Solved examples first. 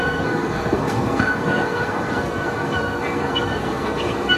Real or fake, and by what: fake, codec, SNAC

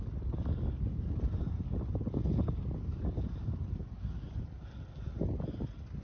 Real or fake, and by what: real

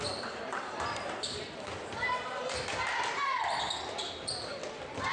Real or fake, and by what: fake, vocoder, BigVGAN v2